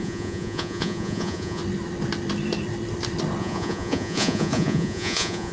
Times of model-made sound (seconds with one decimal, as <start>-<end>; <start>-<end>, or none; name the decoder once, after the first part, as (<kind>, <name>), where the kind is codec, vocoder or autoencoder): 0.0-1.6 (vocoder, Vocos); 3.4-5.5